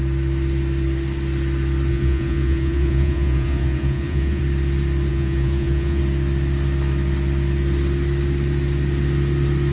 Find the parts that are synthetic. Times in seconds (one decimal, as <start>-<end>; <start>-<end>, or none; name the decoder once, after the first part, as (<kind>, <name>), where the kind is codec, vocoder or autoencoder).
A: 1.9-4.4 (vocoder, Vocos); 5.1-6.0